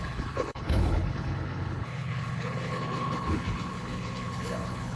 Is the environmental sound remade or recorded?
remade